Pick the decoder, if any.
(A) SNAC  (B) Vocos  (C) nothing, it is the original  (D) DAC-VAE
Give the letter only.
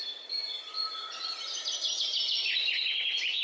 C